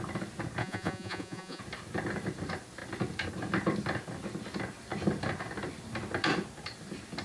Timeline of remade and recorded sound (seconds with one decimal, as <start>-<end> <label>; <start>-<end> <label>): 0.0-0.6 recorded; 0.6-1.6 remade; 1.6-7.2 recorded